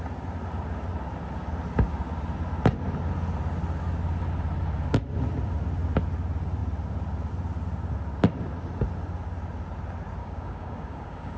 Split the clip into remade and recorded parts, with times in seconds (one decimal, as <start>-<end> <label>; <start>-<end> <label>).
0.0-10.2 recorded; 10.2-11.4 remade